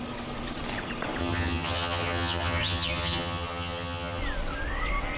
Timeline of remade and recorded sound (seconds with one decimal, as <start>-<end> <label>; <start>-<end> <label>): 0.0-1.2 recorded; 1.2-4.2 remade; 4.2-5.2 recorded